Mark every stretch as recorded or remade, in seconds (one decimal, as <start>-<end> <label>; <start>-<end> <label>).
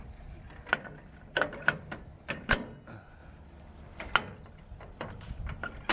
0.0-5.9 recorded